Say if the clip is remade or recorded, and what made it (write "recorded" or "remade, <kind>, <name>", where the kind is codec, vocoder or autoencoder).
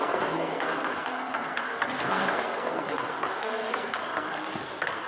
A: remade, codec, SNAC